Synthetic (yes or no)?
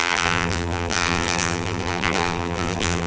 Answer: yes